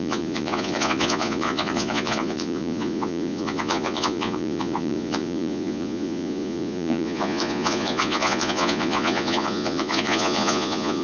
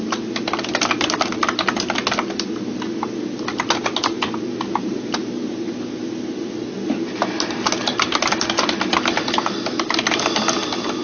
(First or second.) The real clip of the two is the second